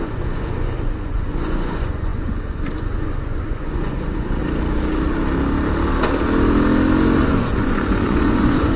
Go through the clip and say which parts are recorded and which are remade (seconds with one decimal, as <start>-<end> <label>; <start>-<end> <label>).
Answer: 0.0-4.4 remade; 4.4-7.2 recorded; 7.2-8.8 remade